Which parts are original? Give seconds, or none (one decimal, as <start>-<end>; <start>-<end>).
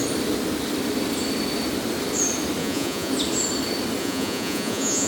0.0-2.6; 3.1-4.0